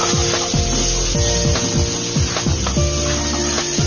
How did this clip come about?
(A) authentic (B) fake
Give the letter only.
A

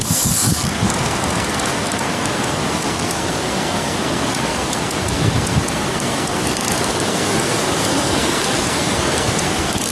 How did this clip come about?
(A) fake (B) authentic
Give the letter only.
A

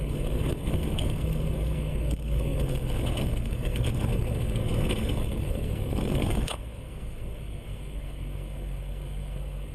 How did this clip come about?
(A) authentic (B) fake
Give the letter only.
B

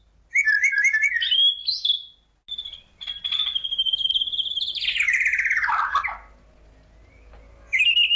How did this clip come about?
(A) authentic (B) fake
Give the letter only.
A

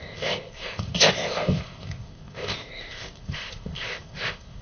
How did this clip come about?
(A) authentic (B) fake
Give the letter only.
B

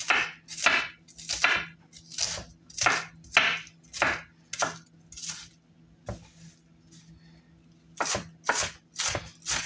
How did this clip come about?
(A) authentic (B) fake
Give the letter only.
A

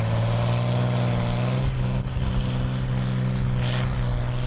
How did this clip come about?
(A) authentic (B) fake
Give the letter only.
A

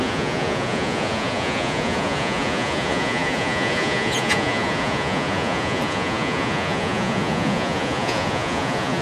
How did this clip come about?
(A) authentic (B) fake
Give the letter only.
B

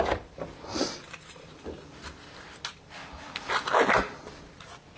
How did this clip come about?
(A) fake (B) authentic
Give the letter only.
B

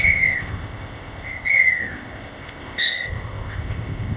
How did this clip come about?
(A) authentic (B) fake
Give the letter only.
B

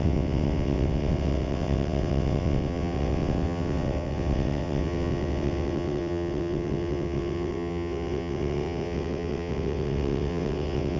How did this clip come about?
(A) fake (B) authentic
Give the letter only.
A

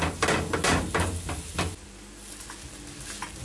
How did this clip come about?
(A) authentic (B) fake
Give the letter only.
A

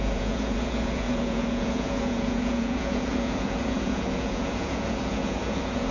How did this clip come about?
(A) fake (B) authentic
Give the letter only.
A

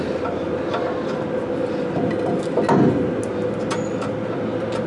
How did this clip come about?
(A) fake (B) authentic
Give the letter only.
B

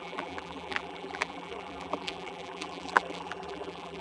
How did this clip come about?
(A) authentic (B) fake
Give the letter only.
B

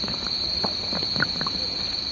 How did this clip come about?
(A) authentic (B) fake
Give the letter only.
A